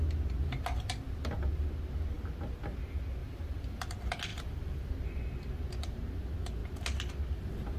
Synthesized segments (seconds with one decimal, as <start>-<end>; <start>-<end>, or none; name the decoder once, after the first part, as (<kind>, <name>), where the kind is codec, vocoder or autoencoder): 3.2-3.8 (vocoder, BigVGAN v2); 4.3-4.9